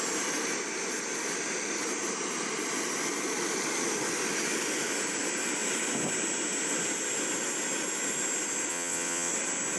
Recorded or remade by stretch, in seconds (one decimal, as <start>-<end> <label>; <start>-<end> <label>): 0.0-8.7 recorded; 8.7-9.3 remade; 9.3-9.8 recorded